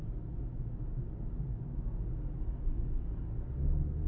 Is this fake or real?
real